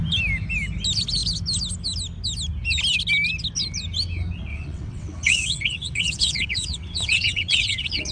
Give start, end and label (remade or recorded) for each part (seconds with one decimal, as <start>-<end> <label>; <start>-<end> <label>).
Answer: 0.0-4.5 recorded; 4.5-8.1 remade